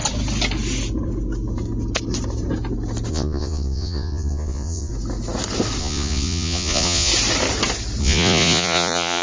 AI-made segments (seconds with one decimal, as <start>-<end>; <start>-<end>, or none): 3.1-4.9; 5.8-7.1; 8.0-9.2